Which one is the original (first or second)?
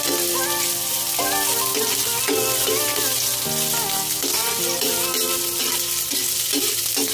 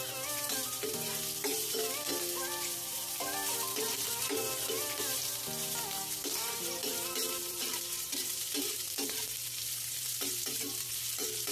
first